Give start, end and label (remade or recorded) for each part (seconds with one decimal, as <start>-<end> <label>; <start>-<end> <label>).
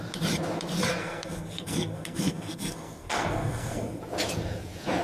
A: 0.0-1.0 recorded; 1.0-4.0 remade; 4.0-5.0 recorded